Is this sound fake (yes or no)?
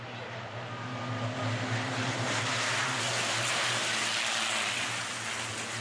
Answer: no